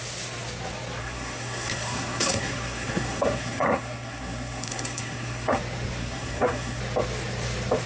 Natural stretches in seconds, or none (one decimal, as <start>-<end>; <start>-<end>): 0.0-1.0; 5.6-6.0; 6.8-7.9